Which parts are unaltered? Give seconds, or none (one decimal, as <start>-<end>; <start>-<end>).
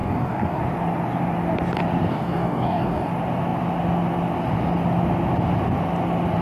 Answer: 0.6-2.1; 3.1-6.4